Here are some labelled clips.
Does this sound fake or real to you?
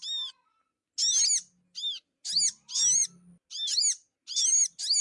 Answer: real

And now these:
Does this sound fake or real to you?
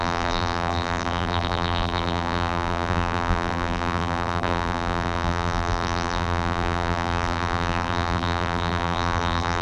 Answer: fake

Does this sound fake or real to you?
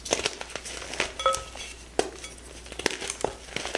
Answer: real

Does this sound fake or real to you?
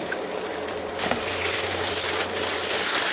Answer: fake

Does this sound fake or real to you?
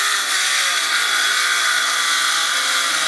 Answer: real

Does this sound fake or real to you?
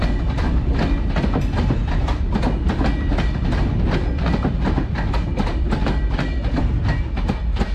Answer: real